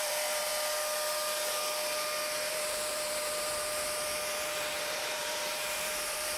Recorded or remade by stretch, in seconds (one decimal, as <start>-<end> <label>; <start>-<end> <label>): 0.0-0.5 remade; 0.5-2.5 recorded; 2.5-6.4 remade